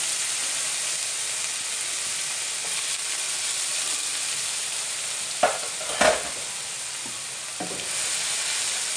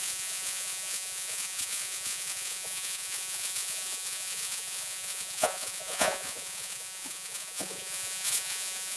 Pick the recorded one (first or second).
first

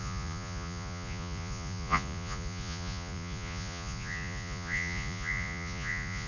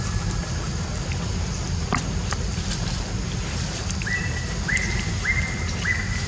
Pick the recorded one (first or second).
second